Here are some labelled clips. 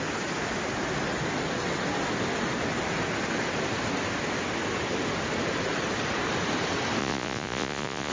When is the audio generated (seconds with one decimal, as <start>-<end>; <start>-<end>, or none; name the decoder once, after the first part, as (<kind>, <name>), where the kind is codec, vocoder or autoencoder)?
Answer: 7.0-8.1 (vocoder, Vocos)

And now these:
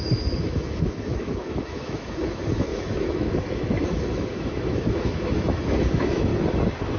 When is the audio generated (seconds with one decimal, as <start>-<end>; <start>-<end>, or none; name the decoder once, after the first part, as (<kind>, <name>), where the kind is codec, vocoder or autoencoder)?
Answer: 0.0-6.3 (autoencoder, DAC-VAE)

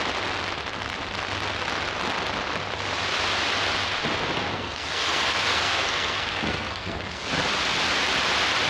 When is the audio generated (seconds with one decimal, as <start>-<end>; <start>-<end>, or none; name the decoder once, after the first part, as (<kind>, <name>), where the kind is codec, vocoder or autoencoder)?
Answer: 4.5-7.3 (codec, SNAC)

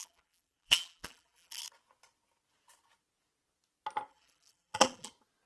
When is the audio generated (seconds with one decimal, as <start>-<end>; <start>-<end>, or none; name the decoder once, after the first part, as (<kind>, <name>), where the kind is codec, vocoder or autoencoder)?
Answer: 0.0-1.6 (vocoder, BigVGAN v2); 4.1-5.1

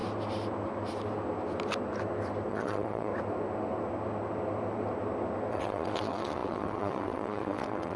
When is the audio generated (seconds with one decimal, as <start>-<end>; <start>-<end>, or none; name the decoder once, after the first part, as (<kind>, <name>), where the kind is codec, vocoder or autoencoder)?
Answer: 2.5-3.1 (vocoder, WaveNeXt); 5.5-8.0

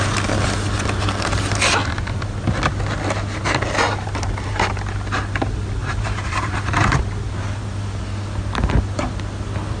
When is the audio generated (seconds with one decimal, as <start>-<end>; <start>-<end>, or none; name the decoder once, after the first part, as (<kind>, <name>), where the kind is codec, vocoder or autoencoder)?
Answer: 5.8-7.0 (vocoder, BigVGAN v2)